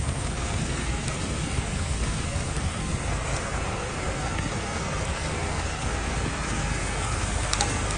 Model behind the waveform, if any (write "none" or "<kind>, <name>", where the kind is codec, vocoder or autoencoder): codec, SNAC